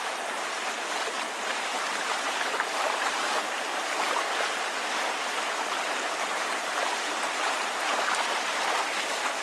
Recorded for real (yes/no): no